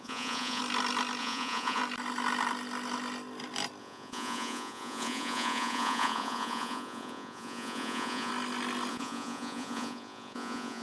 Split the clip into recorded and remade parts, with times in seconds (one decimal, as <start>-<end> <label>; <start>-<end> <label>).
0.0-0.6 remade; 0.6-1.2 recorded; 1.2-1.8 remade; 1.8-3.8 recorded; 3.8-8.3 remade; 8.3-8.9 recorded; 8.9-10.8 remade